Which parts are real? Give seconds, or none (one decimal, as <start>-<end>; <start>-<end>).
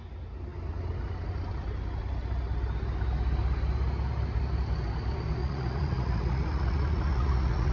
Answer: 0.0-5.4